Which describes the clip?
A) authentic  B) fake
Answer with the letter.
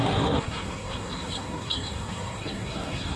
B